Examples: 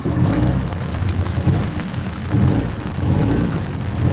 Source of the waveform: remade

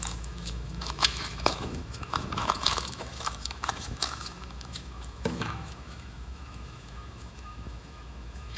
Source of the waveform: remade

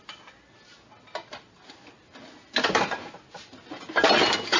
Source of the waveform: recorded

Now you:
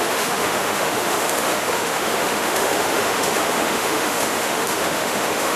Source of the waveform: remade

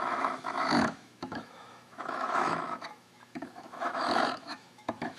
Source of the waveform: remade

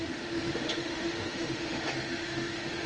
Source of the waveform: remade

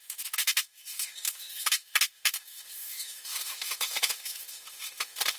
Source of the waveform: remade